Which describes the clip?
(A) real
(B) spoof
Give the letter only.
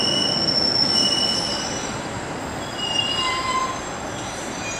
A